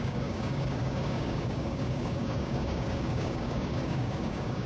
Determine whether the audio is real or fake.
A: fake